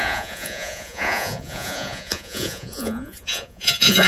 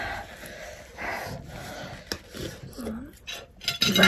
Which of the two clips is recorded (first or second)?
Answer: second